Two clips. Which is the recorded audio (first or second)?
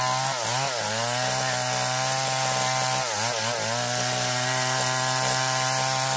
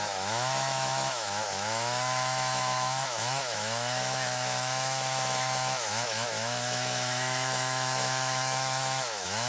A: first